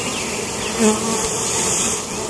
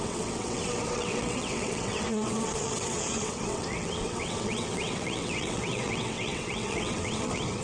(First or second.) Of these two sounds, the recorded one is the first